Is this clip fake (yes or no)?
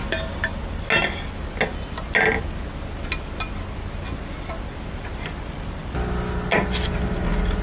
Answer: no